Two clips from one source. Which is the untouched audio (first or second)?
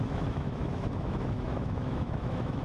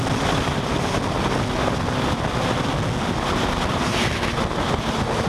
second